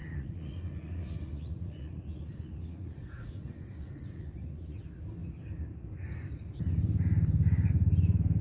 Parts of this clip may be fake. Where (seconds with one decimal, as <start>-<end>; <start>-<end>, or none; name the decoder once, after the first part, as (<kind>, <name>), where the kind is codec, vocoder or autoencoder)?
0.0-4.8 (vocoder, Vocos)